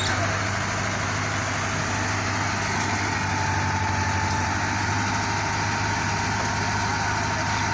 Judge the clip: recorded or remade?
recorded